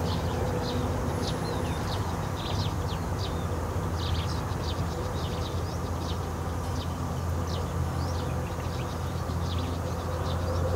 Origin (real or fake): real